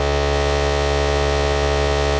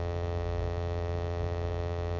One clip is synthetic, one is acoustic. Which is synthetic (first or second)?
second